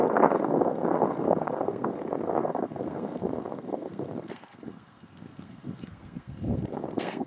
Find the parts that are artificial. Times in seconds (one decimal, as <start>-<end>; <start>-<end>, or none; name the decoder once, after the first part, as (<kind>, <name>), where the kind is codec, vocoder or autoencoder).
0.0-7.3 (codec, SNAC)